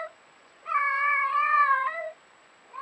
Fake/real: fake